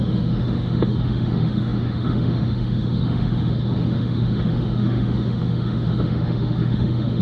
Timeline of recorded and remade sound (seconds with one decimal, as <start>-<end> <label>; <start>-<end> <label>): 0.0-7.2 remade